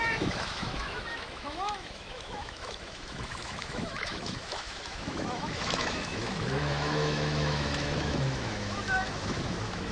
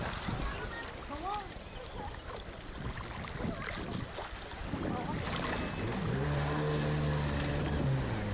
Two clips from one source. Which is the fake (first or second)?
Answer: first